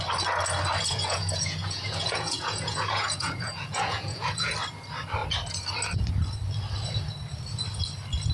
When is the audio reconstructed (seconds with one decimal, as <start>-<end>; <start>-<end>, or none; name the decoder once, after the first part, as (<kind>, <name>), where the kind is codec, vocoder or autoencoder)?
0.8-4.5 (vocoder, Vocos)